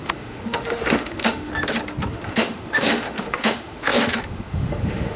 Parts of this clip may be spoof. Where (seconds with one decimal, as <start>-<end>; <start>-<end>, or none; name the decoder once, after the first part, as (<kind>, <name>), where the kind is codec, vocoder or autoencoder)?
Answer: 0.0-1.5 (autoencoder, DAC-VAE); 2.1-5.2